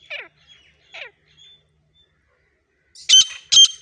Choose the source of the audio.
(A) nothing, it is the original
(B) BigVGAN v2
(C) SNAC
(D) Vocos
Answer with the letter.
A